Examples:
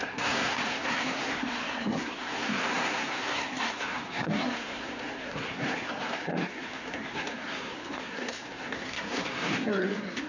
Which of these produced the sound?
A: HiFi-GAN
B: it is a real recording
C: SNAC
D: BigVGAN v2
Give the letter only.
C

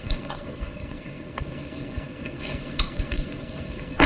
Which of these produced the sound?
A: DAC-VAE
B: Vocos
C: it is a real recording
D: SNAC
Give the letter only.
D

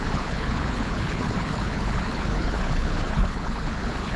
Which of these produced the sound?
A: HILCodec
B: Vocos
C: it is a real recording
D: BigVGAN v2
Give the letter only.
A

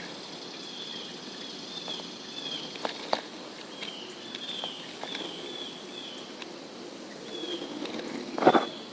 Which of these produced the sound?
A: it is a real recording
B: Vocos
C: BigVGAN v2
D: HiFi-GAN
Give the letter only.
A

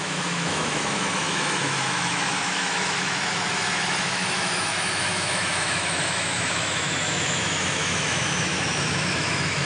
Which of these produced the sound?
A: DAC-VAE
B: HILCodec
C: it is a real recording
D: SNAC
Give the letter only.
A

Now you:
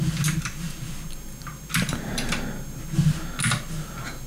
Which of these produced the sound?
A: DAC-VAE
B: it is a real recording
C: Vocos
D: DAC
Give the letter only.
B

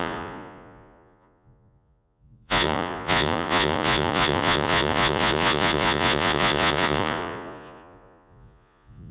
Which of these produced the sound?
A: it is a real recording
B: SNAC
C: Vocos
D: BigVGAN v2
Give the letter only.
C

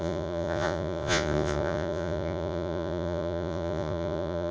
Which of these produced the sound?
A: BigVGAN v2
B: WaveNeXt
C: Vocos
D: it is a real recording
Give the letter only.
C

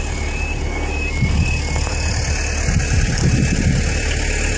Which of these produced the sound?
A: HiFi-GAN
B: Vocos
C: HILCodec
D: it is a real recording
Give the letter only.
D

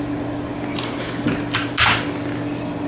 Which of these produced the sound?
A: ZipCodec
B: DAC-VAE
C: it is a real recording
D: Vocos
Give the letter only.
C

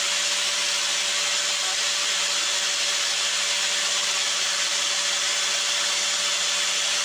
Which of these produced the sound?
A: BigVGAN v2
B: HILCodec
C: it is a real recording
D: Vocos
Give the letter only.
C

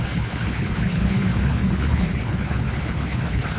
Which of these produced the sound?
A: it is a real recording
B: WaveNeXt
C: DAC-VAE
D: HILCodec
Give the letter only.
D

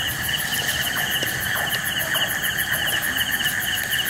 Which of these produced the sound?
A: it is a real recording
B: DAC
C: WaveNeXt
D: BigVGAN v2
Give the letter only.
A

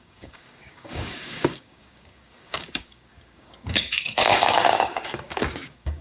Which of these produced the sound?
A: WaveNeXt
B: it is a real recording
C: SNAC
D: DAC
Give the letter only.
D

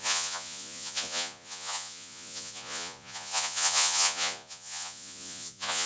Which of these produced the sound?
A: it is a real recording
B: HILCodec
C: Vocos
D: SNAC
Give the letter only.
C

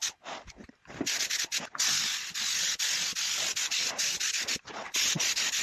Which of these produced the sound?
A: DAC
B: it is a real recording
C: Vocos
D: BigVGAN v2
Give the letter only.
B